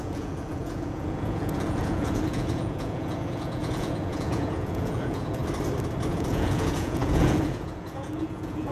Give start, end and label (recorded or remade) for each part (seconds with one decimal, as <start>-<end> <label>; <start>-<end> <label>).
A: 0.0-5.4 remade; 5.4-6.1 recorded; 6.1-8.7 remade